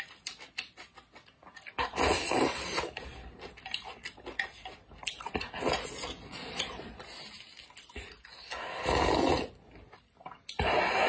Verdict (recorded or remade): recorded